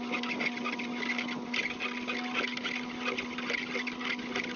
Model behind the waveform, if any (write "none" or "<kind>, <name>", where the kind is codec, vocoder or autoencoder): none